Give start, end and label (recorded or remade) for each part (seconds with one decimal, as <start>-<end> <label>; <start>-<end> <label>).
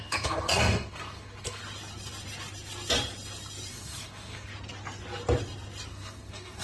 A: 0.0-1.6 remade; 1.6-3.7 recorded; 3.7-4.5 remade; 4.5-5.9 recorded; 5.9-6.6 remade